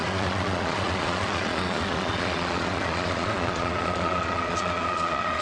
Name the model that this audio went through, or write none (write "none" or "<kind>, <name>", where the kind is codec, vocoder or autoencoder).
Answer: vocoder, Vocos